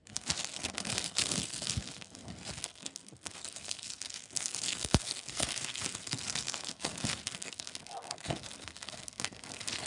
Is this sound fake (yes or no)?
yes